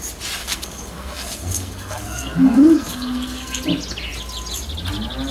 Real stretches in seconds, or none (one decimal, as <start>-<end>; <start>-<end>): 0.0-0.4; 3.6-5.3